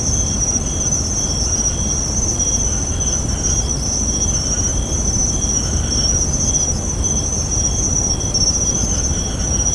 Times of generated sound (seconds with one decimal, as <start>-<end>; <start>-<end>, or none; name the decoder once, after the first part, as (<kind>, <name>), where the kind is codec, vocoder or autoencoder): 4.7-8.9 (vocoder, BigVGAN v2)